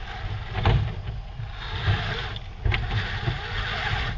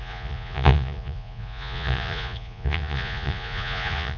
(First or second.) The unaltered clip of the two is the first